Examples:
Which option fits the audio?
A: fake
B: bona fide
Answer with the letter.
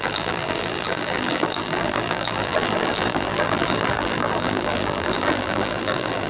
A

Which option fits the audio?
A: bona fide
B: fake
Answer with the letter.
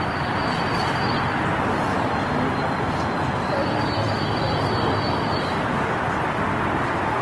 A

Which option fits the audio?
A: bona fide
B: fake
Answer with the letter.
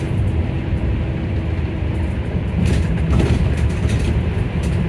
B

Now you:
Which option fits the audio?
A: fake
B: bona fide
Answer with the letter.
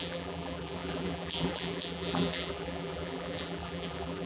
A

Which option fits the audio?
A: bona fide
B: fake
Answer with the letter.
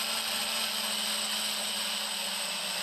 A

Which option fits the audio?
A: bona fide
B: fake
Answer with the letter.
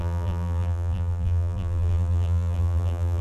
B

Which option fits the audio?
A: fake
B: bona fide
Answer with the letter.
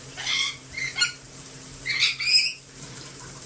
A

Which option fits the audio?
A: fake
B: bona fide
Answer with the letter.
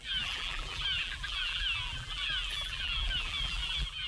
A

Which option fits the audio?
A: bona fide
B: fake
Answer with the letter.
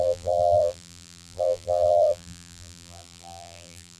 B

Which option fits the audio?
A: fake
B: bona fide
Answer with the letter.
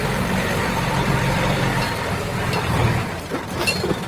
A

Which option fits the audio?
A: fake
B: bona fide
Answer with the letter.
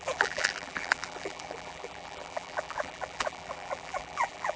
A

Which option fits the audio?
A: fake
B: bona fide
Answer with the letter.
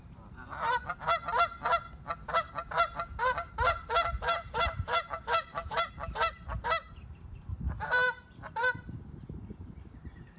A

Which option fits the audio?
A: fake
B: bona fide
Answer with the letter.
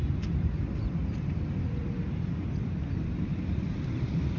A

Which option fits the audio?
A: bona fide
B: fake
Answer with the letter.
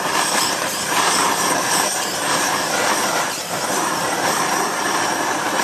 B